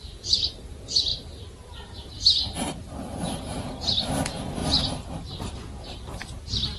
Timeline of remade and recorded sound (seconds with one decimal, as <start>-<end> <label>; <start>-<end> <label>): 0.0-1.1 recorded; 1.1-4.1 remade; 4.1-4.6 recorded; 4.6-6.8 remade